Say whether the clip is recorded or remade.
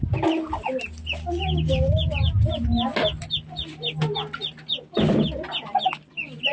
recorded